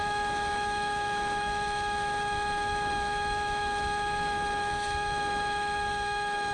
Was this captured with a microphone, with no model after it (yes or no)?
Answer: no